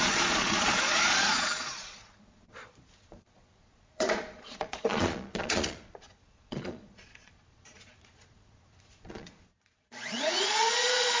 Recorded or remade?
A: remade